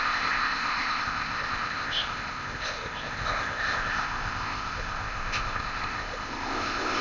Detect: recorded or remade remade